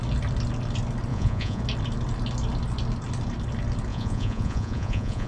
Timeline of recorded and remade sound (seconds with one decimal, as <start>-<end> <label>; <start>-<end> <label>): 0.0-1.1 recorded; 1.1-1.6 remade; 1.6-3.9 recorded; 3.9-5.3 remade